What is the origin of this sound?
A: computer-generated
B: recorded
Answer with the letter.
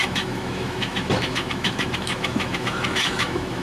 A